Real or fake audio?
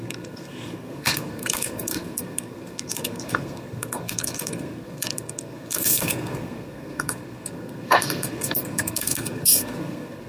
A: fake